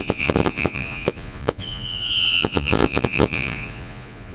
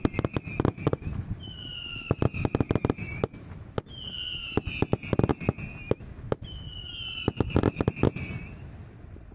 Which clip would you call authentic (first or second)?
second